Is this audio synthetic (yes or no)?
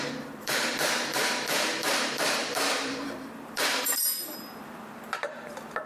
yes